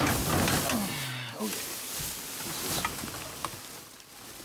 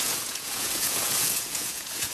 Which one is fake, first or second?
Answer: second